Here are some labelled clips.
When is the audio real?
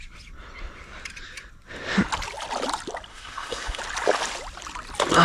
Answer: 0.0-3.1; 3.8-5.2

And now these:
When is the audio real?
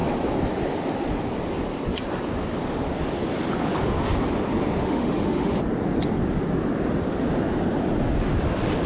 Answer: 0.0-4.8; 5.5-8.9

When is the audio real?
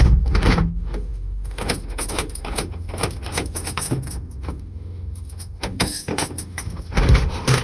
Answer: none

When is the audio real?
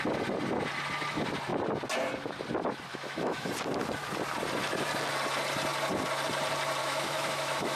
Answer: 0.0-2.9; 3.5-6.8